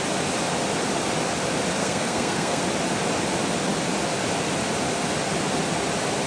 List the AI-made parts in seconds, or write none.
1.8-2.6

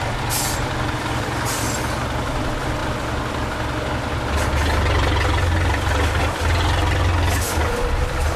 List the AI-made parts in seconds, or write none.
none

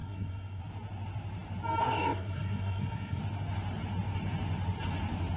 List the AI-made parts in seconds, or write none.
0.0-0.6; 1.8-3.2

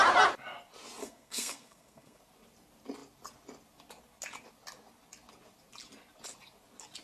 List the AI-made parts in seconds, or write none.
1.0-2.2

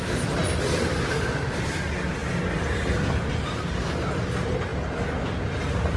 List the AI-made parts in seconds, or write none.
none

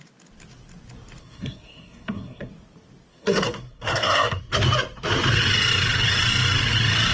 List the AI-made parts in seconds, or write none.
1.2-2.5; 3.1-4.4

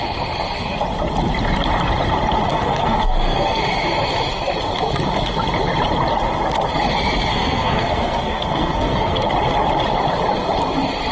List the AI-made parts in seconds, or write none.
2.5-3.6; 7.3-9.3

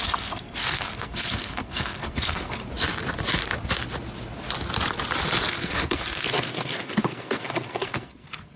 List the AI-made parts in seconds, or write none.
0.0-2.6; 5.5-8.6